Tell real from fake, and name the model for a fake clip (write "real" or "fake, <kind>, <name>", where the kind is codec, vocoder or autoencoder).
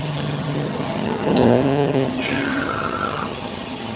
fake, vocoder, HiFi-GAN